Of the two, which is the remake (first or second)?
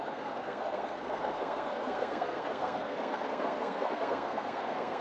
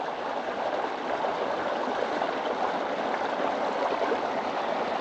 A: first